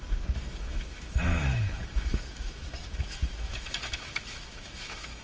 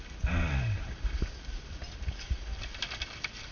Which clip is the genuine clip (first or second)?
second